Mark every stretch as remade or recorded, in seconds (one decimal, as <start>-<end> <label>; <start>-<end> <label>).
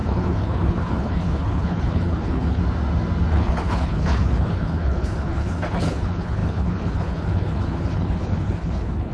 0.0-2.6 remade; 2.6-3.3 recorded; 3.3-9.1 remade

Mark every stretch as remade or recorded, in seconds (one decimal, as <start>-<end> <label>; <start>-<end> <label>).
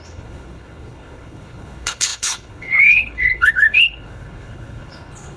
0.0-5.4 remade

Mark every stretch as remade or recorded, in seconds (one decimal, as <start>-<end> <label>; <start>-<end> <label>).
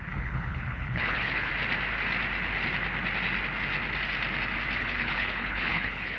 0.0-1.5 remade; 1.5-4.8 recorded; 4.8-6.2 remade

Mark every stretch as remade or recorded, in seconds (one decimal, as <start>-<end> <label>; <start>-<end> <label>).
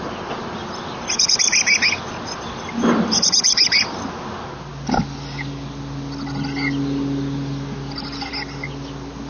0.0-9.3 recorded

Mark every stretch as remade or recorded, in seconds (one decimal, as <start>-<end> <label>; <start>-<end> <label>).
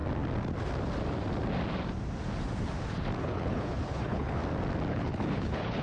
0.0-3.2 recorded; 3.2-4.4 remade; 4.4-4.9 recorded; 4.9-5.8 remade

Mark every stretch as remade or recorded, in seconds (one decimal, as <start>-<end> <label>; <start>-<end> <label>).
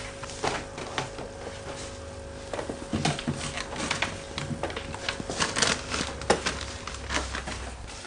0.0-8.1 recorded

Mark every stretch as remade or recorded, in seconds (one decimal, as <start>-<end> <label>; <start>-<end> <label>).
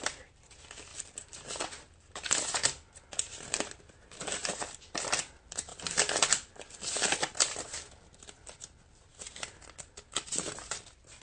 0.0-11.2 recorded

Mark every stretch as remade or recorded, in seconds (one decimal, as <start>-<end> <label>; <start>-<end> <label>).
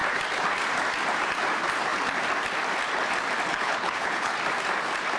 0.0-3.5 recorded; 3.5-4.3 remade; 4.3-5.2 recorded